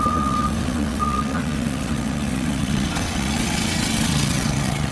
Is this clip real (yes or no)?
no